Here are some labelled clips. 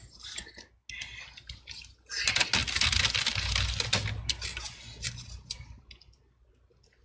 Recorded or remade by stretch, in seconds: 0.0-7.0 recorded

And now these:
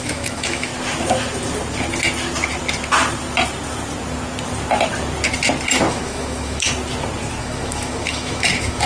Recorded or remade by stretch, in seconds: 0.0-0.7 remade; 0.7-5.9 recorded; 5.9-6.7 remade; 6.7-7.4 recorded; 7.4-8.9 remade

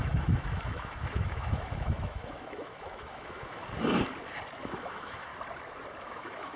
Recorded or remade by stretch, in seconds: 0.0-3.6 remade; 3.6-4.6 recorded; 4.6-5.3 remade; 5.3-6.0 recorded; 6.0-6.6 remade